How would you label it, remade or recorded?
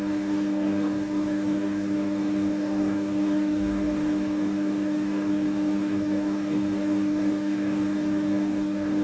remade